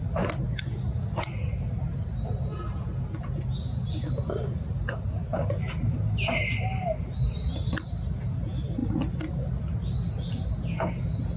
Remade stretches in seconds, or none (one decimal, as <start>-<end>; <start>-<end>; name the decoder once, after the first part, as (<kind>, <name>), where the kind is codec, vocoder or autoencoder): none